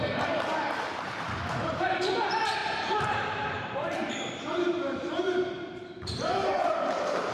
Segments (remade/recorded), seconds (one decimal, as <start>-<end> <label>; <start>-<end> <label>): 0.0-7.3 remade